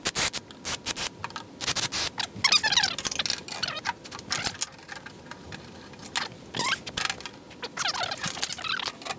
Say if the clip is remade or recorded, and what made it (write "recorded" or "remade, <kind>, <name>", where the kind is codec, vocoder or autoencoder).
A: recorded